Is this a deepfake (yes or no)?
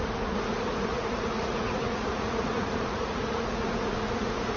yes